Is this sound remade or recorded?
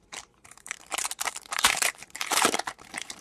remade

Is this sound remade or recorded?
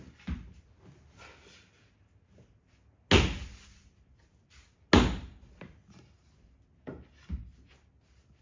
recorded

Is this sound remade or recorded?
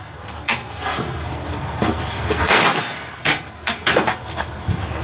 remade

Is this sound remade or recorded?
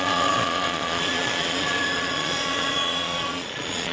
remade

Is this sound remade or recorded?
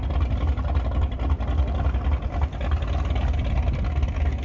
recorded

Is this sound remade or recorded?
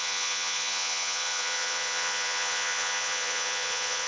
remade